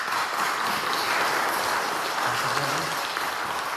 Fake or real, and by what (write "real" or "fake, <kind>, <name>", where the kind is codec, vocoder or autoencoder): real